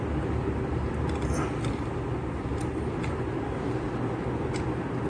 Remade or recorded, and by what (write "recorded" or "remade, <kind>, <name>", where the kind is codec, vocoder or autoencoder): recorded